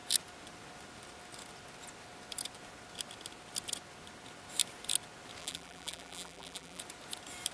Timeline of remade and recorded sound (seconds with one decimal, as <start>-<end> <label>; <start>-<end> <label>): 0.0-5.4 recorded; 5.4-6.8 remade; 6.8-7.5 recorded